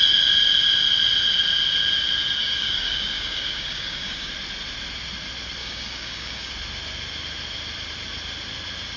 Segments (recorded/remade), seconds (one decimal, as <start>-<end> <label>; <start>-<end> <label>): 0.0-2.4 recorded; 2.4-4.3 remade; 4.3-5.6 recorded; 5.6-6.5 remade; 6.5-9.0 recorded